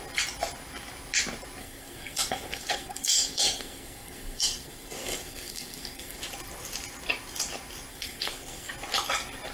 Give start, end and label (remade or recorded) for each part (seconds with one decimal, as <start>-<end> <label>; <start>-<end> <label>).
0.0-1.6 recorded; 1.6-6.2 remade; 6.2-7.9 recorded; 7.9-8.7 remade; 8.7-9.5 recorded